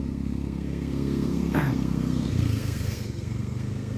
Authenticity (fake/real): fake